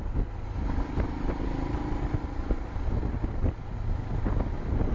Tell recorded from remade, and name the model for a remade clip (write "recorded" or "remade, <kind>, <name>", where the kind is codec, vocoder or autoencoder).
recorded